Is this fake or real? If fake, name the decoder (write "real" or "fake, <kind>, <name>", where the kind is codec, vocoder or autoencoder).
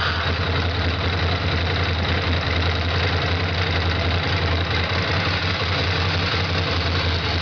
real